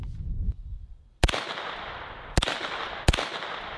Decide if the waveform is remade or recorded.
remade